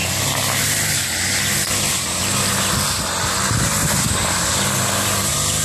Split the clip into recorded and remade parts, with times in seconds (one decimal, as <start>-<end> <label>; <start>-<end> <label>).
0.0-3.8 recorded; 3.8-4.6 remade; 4.6-5.6 recorded